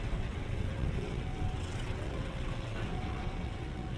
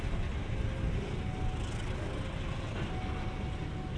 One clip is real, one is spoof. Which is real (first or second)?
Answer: second